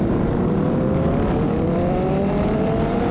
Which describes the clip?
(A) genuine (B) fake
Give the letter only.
A